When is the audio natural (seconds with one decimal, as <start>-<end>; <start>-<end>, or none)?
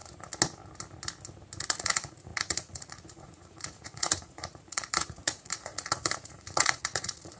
0.0-1.6